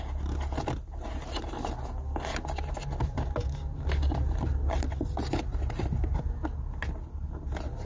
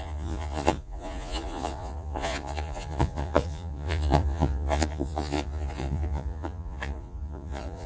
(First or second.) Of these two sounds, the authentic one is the first